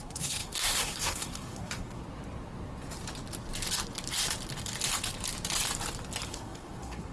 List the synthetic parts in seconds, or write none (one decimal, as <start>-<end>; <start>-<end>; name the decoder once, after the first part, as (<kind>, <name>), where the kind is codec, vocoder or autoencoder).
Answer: 0.0-2.0 (codec, SNAC); 6.3-7.1